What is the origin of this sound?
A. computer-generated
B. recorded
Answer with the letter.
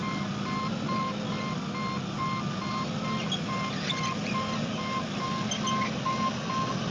B